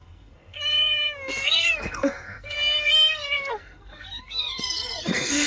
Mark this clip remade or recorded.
remade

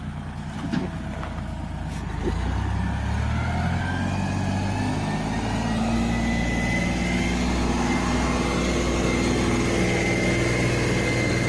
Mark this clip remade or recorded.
recorded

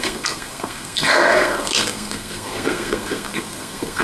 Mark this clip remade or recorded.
remade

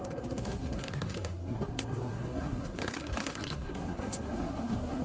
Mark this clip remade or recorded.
remade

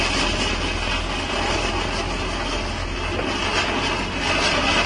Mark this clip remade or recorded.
recorded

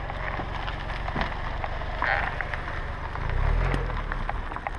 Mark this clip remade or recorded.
recorded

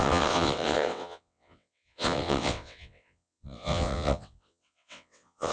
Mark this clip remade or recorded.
remade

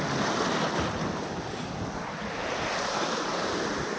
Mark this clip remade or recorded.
recorded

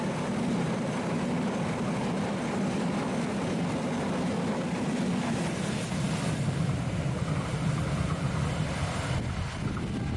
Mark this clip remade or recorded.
recorded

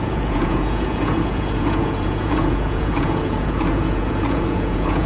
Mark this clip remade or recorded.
remade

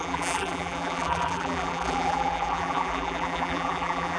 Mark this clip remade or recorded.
remade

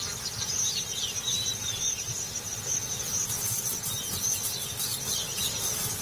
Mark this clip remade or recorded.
recorded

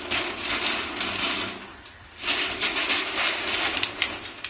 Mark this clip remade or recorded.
recorded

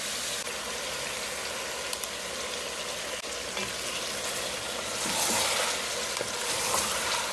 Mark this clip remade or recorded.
recorded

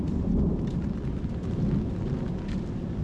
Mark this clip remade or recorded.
recorded